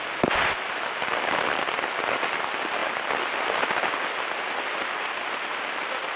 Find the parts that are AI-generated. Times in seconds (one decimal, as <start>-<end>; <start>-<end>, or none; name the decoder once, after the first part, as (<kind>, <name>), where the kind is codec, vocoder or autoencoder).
none